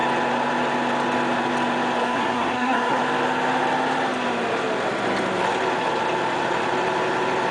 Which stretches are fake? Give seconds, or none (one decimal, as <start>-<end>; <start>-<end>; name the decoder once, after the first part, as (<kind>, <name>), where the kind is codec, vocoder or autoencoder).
2.0-3.0 (codec, SNAC)